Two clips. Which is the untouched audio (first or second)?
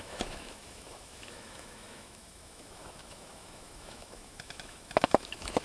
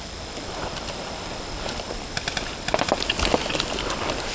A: second